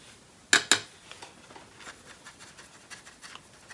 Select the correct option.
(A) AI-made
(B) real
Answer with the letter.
B